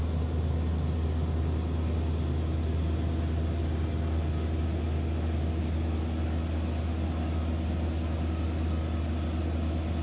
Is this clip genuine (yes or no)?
yes